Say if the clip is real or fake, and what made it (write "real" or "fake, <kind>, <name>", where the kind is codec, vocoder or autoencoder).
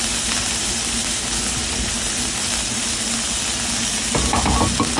real